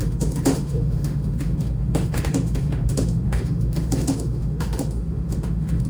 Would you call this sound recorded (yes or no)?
no